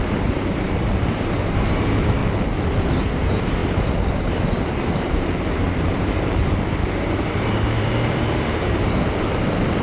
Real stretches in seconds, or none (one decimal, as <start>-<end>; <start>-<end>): 2.2-2.9